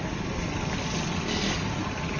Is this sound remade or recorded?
recorded